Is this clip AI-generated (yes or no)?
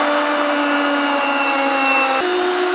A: no